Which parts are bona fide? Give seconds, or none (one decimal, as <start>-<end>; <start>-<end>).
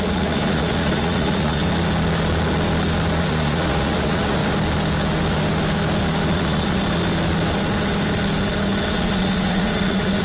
1.6-3.2; 4.4-6.3; 6.8-8.9